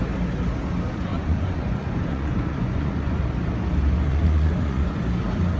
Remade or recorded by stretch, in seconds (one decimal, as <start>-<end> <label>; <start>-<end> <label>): 0.0-1.1 recorded; 1.1-3.2 remade; 3.2-4.1 recorded; 4.1-5.0 remade; 5.0-5.6 recorded